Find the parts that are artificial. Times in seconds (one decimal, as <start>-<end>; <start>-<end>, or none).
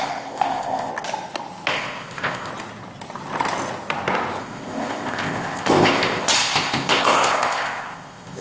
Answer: 0.0-0.9; 1.7-2.5; 4.4-8.4